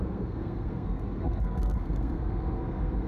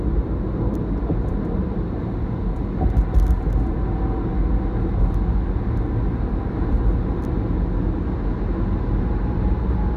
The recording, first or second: second